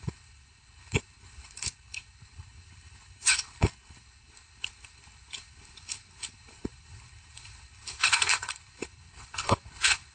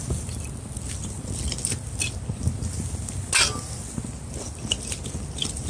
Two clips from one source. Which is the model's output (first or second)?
first